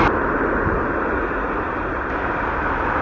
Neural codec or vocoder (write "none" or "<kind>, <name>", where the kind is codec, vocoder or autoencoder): none